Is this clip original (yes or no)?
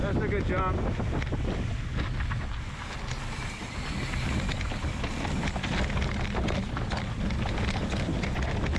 yes